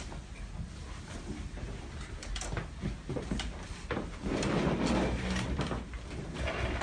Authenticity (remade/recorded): recorded